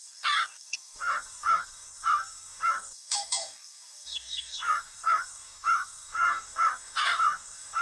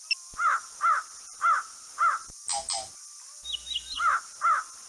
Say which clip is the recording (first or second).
second